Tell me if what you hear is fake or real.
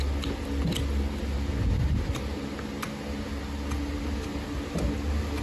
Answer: real